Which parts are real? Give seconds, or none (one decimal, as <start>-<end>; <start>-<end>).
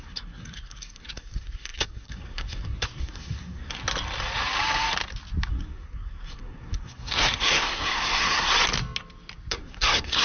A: 3.8-5.5; 8.5-9.5